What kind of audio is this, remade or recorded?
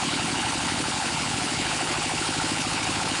remade